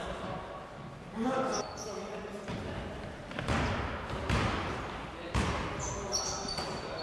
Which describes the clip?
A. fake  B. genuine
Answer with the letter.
B